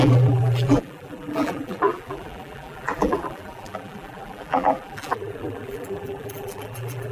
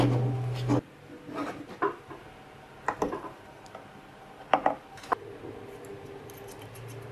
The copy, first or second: first